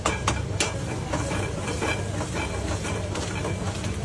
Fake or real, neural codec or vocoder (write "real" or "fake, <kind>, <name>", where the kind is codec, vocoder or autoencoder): real